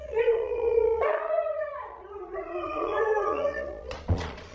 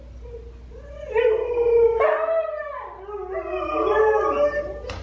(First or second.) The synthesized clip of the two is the first